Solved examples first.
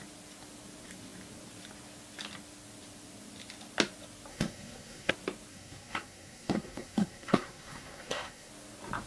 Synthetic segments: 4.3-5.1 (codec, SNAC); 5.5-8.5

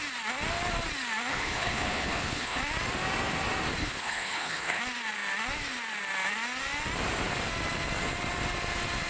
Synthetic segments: 1.3-2.6 (codec, HILCodec); 3.8-4.8

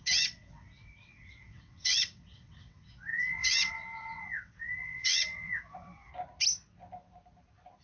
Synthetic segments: 0.0-6.1 (vocoder, WaveNeXt)

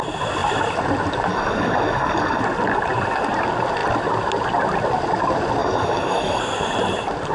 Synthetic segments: 1.3-2.4 (codec, DAC); 5.6-6.4

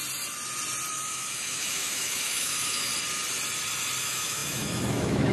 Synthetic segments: 0.9-2.9 (autoencoder, DAC-VAE); 4.0-5.3

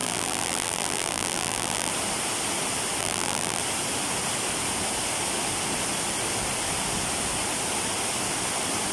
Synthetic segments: 0.0-1.9 (vocoder, BigVGAN v2); 3.0-3.6

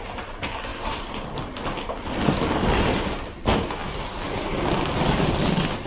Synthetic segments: none

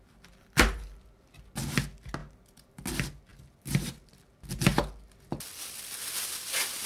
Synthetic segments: none